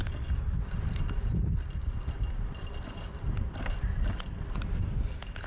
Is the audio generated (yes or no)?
no